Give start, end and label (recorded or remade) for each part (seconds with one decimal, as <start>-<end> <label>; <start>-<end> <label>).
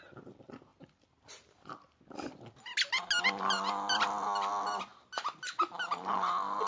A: 0.0-6.7 recorded